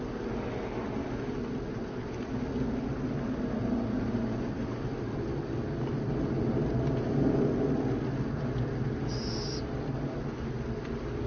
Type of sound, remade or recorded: recorded